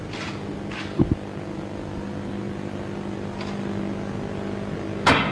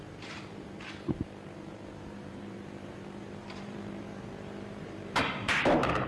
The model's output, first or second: second